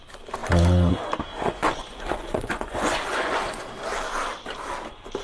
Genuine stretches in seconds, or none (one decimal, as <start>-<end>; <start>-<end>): 0.0-1.3; 3.6-5.2